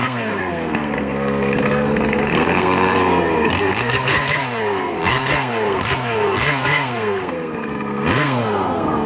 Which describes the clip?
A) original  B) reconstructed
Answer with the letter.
B